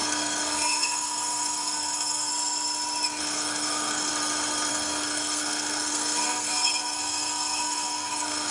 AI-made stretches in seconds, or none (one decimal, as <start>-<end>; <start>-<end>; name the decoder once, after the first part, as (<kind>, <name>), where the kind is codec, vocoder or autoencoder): 0.0-2.3 (codec, SNAC); 3.2-4.1; 4.7-8.5